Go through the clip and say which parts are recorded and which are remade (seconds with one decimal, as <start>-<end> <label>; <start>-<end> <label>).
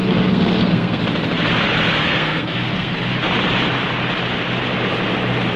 0.0-1.0 remade; 1.0-2.0 recorded; 2.0-2.9 remade; 2.9-5.6 recorded